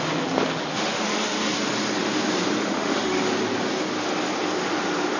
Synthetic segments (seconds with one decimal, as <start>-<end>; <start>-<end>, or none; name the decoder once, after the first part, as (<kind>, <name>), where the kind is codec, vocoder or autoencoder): 0.7-1.5 (autoencoder, DAC-VAE); 2.6-3.2